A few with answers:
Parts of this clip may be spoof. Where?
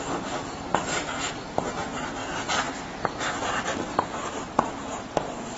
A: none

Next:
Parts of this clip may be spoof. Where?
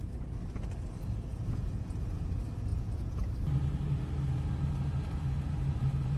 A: 1.3-2.2 (vocoder, Vocos); 2.7-3.3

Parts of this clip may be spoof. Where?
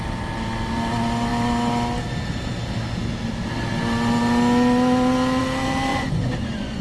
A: 5.9-6.8 (vocoder, Vocos)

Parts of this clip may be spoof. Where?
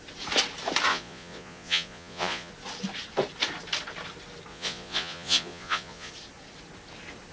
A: 0.9-2.5 (vocoder, Vocos); 4.5-6.1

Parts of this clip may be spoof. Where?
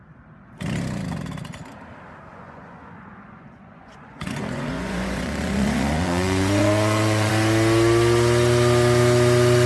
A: 2.3-7.3 (vocoder, Vocos)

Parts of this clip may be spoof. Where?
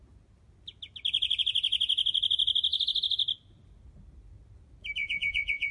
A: 5.0-5.7 (vocoder, Vocos)